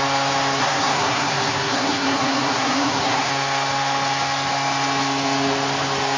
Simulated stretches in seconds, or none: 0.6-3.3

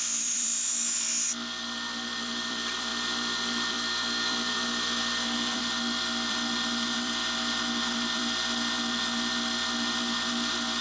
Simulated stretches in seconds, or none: 0.0-0.5; 2.2-7.2; 7.8-10.8

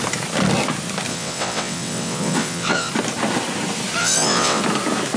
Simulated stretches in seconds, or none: 1.1-2.9; 4.0-4.6

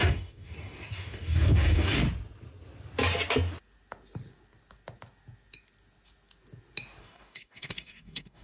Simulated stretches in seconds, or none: 0.0-2.0; 7.0-8.4

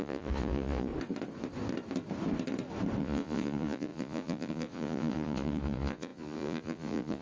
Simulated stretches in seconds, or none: 0.0-0.9; 3.0-7.2

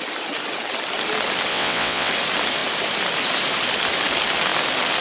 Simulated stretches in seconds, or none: 1.5-2.1